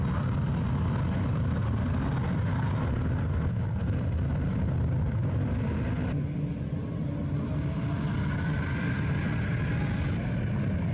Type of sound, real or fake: real